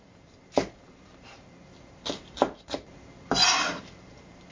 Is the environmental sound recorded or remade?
remade